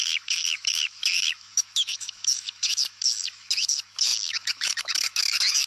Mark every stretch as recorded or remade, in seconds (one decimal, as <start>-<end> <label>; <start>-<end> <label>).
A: 0.0-5.7 remade